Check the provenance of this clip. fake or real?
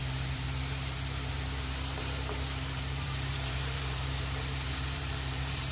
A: fake